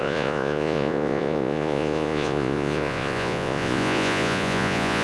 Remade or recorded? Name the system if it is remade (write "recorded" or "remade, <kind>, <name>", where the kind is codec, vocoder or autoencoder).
remade, vocoder, Vocos